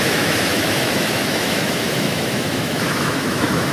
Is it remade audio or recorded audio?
remade